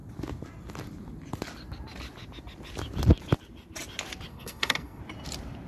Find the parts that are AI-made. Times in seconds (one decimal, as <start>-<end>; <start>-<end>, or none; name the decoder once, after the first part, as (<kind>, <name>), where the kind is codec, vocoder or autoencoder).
4.3-5.0 (codec, SNAC)